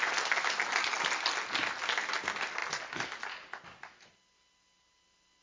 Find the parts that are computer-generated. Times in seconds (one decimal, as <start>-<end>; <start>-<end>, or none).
none